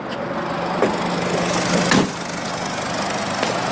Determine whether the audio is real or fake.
real